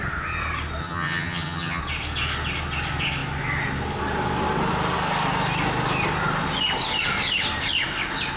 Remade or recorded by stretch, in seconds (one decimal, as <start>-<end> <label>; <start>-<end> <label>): 0.0-0.8 recorded; 0.8-1.8 remade; 1.8-8.4 recorded